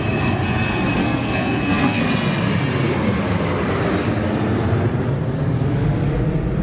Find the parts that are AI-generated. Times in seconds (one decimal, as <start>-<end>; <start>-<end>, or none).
1.0-2.0